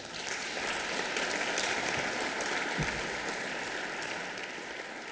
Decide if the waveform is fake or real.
real